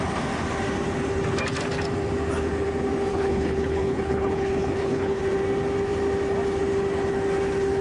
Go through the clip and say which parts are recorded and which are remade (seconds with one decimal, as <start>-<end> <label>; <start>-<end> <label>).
0.0-3.1 recorded; 3.1-5.2 remade; 5.2-7.8 recorded